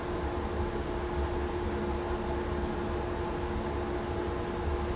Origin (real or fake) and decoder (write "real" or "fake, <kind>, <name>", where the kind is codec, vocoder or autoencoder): real